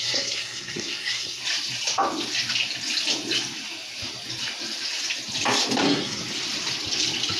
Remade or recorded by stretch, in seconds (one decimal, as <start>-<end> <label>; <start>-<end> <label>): 0.0-1.4 remade; 1.4-5.8 recorded; 5.8-6.2 remade; 6.2-7.4 recorded